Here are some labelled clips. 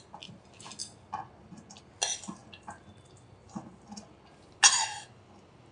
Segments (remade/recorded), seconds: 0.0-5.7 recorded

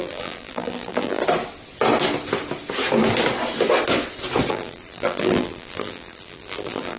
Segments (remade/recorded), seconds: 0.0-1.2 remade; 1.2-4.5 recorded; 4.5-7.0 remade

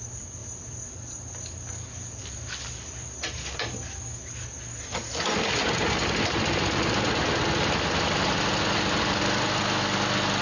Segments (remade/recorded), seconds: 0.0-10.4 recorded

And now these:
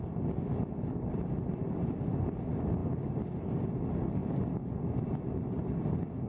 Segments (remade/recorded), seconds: 0.0-6.3 recorded

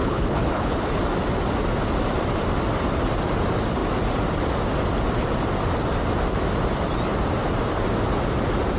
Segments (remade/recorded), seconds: 0.0-1.0 remade; 1.0-8.8 recorded

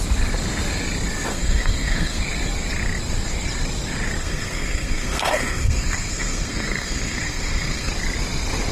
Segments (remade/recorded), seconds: 0.0-1.3 recorded; 1.3-2.2 remade; 2.2-4.2 recorded; 4.2-7.9 remade; 7.9-8.7 recorded

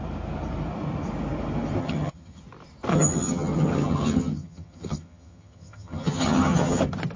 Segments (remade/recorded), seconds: 0.0-1.8 recorded; 1.8-2.4 remade; 2.4-2.9 recorded; 2.9-6.8 remade; 6.8-7.2 recorded